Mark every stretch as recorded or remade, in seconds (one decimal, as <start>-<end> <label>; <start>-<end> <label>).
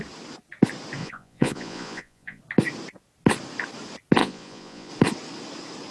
0.0-1.0 recorded; 1.0-2.4 remade; 2.4-4.2 recorded; 4.2-4.9 remade; 4.9-5.9 recorded